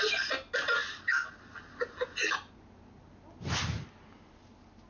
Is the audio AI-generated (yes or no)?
no